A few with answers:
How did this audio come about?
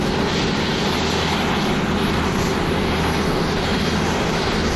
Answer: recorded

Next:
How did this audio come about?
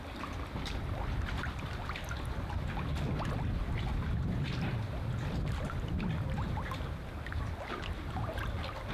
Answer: recorded